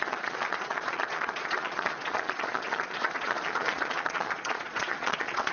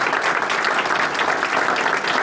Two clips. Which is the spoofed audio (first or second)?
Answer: first